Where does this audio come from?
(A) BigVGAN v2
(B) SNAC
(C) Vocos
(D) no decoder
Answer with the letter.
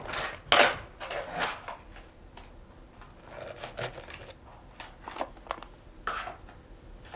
D